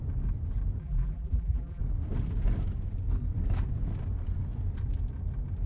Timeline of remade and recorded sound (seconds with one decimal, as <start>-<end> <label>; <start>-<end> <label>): 0.0-0.8 recorded; 0.8-1.8 remade; 1.8-5.7 recorded